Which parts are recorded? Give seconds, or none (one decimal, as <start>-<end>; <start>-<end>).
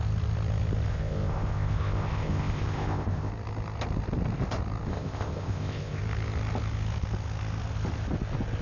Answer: 0.0-0.9; 3.3-4.9; 6.0-8.6